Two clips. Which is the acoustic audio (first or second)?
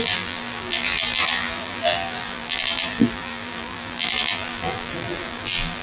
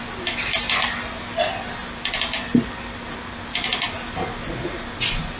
second